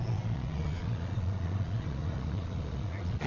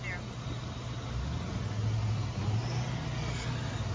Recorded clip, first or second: second